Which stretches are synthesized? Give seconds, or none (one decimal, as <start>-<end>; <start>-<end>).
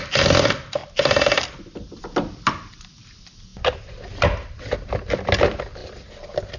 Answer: none